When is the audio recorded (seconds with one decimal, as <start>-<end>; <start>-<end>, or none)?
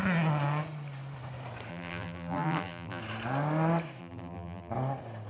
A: 0.0-1.7; 3.0-4.0; 4.7-5.3